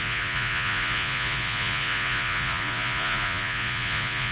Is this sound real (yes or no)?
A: no